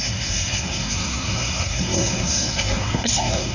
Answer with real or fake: fake